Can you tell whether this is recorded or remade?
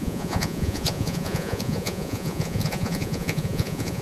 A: remade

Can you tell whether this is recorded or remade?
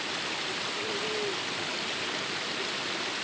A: recorded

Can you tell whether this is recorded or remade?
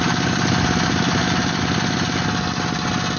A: recorded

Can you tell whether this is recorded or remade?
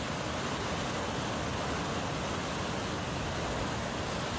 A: recorded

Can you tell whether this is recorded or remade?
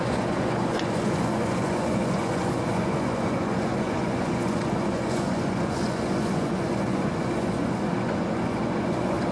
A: remade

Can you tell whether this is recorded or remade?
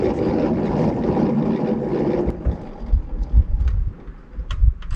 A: recorded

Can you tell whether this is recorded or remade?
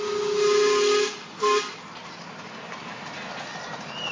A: recorded